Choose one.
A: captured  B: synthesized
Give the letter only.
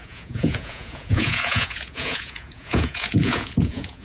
B